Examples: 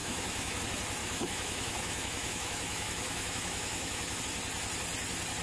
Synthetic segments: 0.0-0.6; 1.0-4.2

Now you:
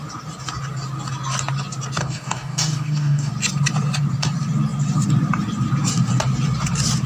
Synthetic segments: 2.0-3.3

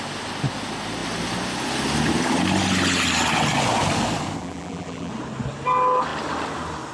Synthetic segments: 4.4-5.1

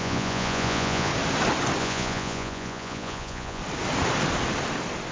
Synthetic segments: 0.0-1.1; 1.8-3.6

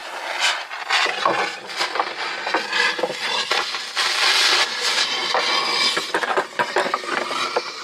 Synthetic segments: 4.7-5.2; 6.0-7.8

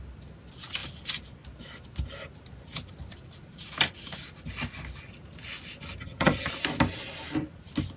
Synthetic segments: 6.0-6.5

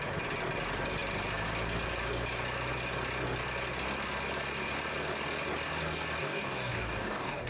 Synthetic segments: 6.2-7.5

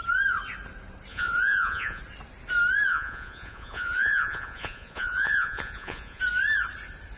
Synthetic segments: 1.1-2.0; 2.9-6.2